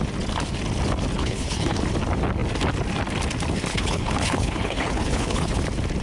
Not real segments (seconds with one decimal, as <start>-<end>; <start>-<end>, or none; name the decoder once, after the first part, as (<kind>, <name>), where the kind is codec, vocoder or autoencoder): 1.2-1.8 (codec, HILCodec); 3.7-5.6